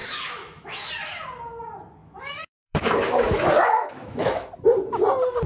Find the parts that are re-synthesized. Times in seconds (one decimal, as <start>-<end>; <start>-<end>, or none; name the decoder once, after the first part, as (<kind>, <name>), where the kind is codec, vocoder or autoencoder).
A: 0.0-0.9 (autoencoder, DAC-VAE); 2.0-4.5